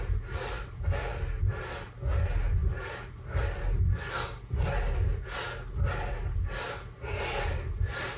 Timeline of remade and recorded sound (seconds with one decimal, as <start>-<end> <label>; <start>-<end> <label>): 0.0-8.2 recorded